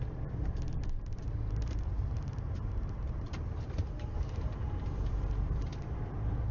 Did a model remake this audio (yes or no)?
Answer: yes